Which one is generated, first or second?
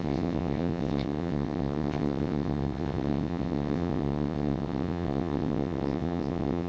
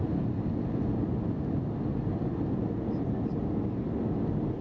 first